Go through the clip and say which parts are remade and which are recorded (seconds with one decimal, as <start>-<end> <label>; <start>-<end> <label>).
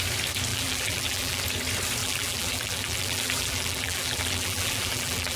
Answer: 0.0-0.5 recorded; 0.5-1.4 remade; 1.4-2.0 recorded; 2.0-5.4 remade